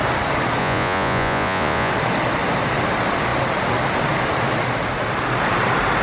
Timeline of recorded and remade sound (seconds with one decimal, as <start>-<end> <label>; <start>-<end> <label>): 0.0-0.6 recorded; 0.6-1.9 remade; 1.9-6.0 recorded